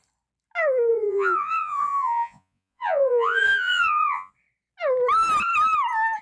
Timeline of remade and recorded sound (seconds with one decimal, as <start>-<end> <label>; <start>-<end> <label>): 0.0-0.9 recorded; 0.9-4.3 remade; 4.3-6.2 recorded